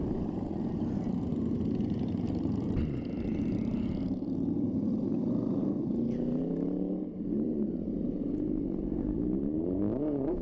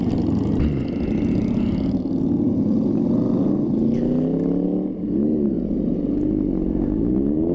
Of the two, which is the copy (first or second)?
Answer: first